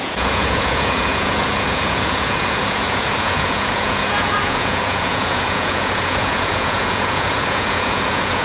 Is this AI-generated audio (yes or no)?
yes